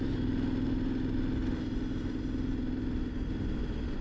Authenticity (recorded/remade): recorded